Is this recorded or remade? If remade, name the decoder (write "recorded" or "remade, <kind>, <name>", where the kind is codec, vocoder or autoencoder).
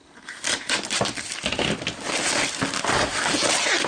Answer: recorded